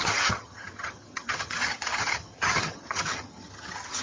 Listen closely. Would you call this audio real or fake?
fake